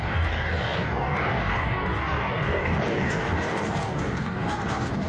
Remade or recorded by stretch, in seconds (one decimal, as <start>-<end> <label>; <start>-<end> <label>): 0.0-5.1 remade